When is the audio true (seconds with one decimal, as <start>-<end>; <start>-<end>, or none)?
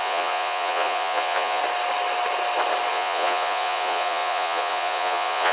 1.6-2.9